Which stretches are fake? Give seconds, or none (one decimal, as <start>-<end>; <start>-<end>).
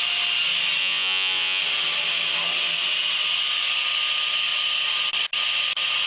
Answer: 0.8-1.6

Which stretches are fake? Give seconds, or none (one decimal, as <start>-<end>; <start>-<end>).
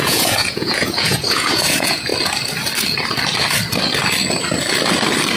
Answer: 0.0-2.1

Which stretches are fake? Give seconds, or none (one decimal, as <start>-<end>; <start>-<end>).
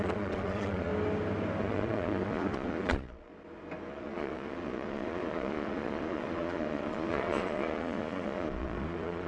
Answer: 0.0-0.9; 1.6-3.3; 3.9-9.3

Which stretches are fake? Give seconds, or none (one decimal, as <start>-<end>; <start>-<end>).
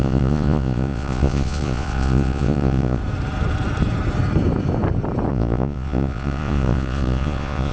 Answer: 0.0-3.0; 5.3-7.7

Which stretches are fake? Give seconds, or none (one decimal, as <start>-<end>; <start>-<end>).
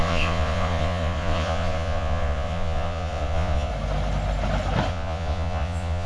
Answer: 0.0-3.7; 4.9-6.1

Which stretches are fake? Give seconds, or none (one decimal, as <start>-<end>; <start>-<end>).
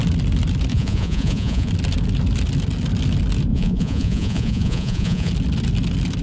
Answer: 0.7-1.7; 3.5-5.3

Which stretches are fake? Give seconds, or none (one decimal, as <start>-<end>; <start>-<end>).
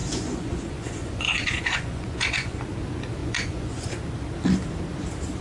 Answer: 0.0-2.6; 3.2-3.9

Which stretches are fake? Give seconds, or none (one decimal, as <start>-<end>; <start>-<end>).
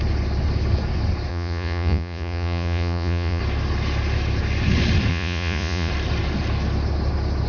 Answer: 1.3-3.4; 5.1-5.9